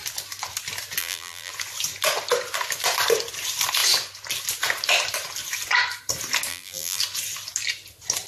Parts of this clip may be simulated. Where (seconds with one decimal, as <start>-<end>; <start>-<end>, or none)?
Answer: 1.0-1.5; 6.5-7.0